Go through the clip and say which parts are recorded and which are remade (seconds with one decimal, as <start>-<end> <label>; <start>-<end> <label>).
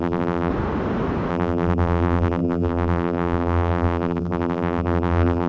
0.0-0.5 remade; 0.5-1.3 recorded; 1.3-5.5 remade